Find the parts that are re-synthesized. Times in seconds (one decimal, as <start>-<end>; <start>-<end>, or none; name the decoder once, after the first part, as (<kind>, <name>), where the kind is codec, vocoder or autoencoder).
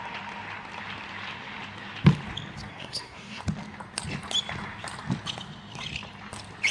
2.7-3.4 (codec, SNAC)